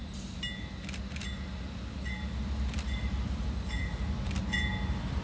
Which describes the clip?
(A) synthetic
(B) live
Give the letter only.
B